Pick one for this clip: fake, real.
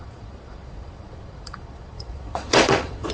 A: fake